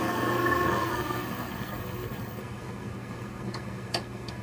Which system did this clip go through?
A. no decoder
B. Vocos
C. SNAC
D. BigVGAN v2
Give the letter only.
C